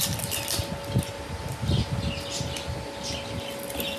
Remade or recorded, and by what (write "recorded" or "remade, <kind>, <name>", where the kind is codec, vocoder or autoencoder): recorded